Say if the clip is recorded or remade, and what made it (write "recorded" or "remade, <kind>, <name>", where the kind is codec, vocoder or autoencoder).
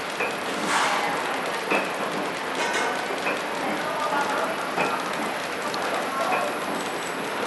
recorded